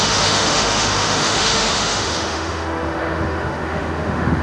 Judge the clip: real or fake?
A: fake